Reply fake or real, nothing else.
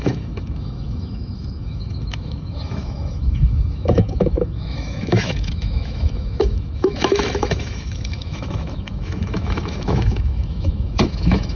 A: fake